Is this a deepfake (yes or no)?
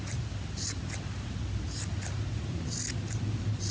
no